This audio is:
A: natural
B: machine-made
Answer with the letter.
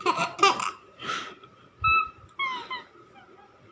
A